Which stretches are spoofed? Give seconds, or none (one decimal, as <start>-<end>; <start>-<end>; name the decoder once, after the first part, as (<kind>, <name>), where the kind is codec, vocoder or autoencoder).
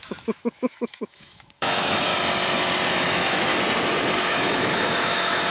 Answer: 0.0-2.1 (autoencoder, DAC-VAE); 2.9-3.5; 4.2-5.5